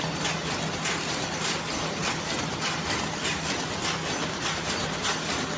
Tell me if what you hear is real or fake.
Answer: real